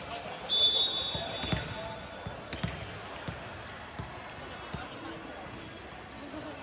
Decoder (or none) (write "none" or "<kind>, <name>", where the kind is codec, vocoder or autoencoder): none